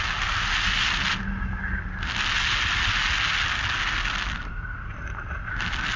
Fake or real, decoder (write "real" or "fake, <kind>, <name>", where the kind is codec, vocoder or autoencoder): real